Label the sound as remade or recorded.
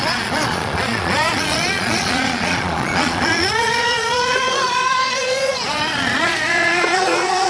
remade